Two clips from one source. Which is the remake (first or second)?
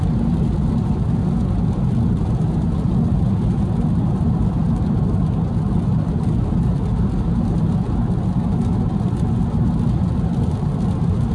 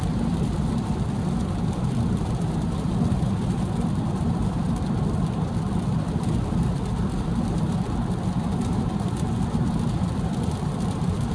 second